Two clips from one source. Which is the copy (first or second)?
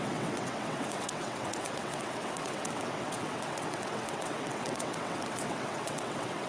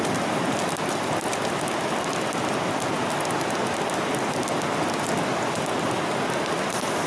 first